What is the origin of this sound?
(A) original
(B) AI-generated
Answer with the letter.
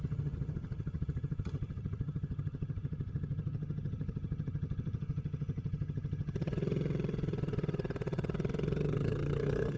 B